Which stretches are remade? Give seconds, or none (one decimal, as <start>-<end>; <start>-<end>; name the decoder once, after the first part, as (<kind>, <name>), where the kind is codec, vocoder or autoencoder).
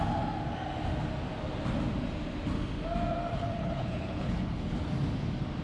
3.3-4.8 (codec, HILCodec)